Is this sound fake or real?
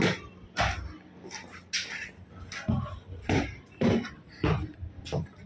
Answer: real